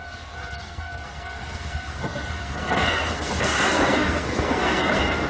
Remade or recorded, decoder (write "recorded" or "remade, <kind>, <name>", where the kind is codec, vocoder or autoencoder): remade, codec, SNAC